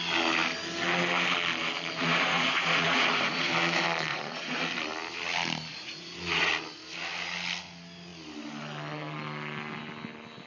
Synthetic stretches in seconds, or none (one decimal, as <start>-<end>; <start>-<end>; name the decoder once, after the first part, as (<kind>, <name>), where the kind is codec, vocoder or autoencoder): 2.0-3.5 (vocoder, Vocos); 4.1-4.6; 5.7-6.5